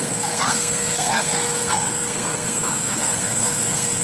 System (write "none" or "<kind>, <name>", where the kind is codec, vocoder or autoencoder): codec, SNAC